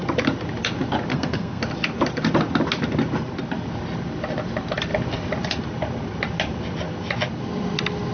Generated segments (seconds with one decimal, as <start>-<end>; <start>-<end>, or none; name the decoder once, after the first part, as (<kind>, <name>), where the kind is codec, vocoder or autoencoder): 1.1-1.6 (codec, SNAC)